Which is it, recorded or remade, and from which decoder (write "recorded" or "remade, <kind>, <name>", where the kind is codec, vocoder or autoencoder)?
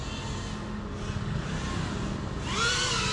recorded